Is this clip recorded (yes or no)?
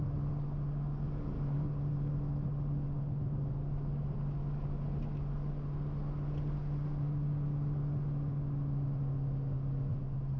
yes